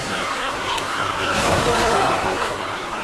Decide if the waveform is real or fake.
fake